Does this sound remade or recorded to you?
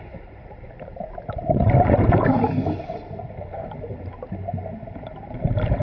remade